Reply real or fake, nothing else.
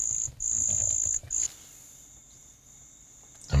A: real